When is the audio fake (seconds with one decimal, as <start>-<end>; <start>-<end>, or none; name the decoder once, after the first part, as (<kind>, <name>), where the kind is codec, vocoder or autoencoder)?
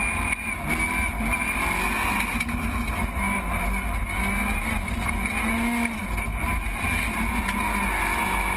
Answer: none